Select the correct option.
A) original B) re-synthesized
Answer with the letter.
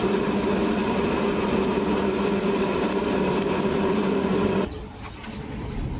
A